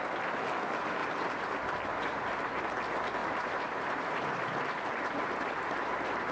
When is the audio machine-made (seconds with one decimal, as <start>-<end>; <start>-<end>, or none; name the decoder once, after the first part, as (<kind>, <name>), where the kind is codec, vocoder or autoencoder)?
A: 1.0-2.6 (vocoder, BigVGAN v2); 3.2-6.3